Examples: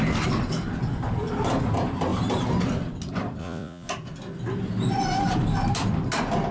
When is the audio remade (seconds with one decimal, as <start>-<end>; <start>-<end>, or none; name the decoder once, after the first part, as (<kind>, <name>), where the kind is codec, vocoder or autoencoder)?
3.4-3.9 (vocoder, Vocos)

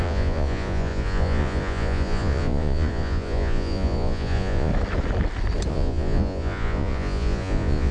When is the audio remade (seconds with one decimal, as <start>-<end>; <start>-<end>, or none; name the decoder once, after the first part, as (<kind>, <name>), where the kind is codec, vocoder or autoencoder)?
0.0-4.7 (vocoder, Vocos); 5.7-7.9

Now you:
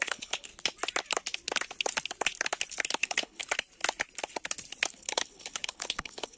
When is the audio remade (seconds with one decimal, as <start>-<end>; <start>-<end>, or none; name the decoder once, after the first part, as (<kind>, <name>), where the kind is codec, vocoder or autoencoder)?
0.0-0.5 (codec, HILCodec); 3.0-3.4; 4.9-6.4

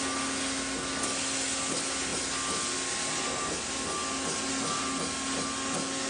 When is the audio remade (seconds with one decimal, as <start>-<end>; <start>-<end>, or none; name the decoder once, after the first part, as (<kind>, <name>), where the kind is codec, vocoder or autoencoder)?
none